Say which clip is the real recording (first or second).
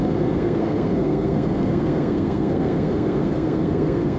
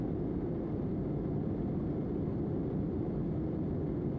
second